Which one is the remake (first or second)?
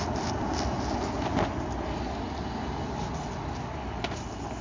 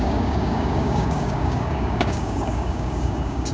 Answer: second